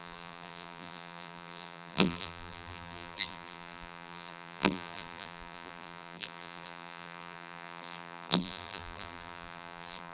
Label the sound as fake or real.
fake